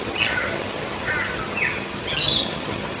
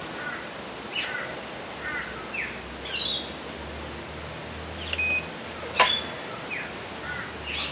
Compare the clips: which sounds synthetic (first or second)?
first